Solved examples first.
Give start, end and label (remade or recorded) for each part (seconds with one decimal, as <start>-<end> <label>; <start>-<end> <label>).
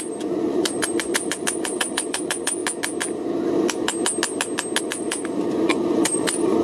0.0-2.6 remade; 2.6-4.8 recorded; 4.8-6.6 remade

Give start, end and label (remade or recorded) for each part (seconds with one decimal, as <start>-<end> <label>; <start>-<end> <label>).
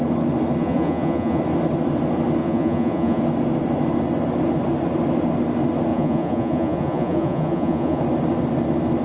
0.0-0.6 recorded; 0.6-1.4 remade; 1.4-2.4 recorded; 2.4-3.2 remade; 3.2-5.9 recorded; 5.9-8.0 remade; 8.0-9.0 recorded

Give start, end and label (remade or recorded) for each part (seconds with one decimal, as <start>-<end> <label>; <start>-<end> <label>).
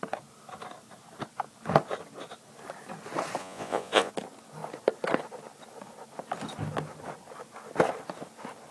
0.0-3.4 recorded; 3.4-4.1 remade; 4.1-8.7 recorded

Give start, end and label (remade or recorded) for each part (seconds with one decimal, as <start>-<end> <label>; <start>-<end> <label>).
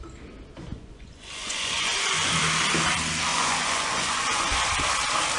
0.0-0.7 recorded; 0.7-2.3 remade; 2.3-3.3 recorded; 3.3-4.7 remade; 4.7-5.4 recorded